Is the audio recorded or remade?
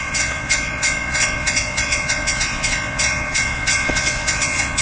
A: remade